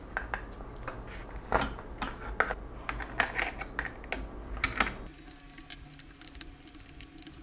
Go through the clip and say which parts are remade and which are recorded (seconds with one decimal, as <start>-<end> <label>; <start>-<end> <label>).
0.0-7.4 recorded